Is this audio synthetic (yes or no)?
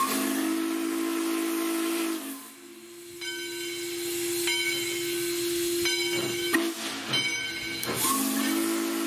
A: no